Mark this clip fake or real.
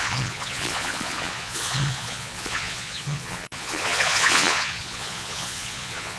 fake